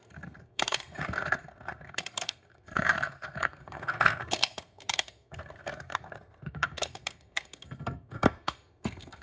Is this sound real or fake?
fake